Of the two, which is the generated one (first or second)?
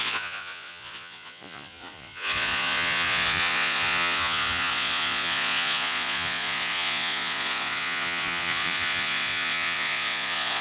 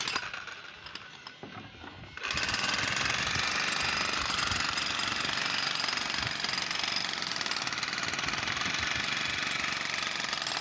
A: first